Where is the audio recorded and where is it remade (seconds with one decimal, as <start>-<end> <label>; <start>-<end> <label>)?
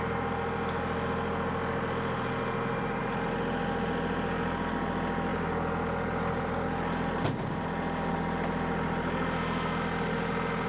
0.0-10.7 recorded